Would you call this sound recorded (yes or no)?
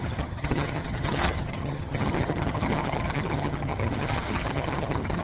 no